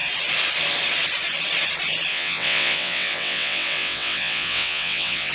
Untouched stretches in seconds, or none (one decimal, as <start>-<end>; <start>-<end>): 0.0-2.1